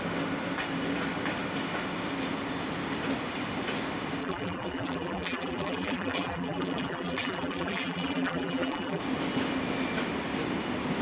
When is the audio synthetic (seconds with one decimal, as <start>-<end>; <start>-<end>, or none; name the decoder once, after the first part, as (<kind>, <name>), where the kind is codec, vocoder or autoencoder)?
4.2-9.0 (vocoder, BigVGAN v2)